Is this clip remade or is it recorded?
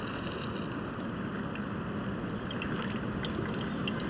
recorded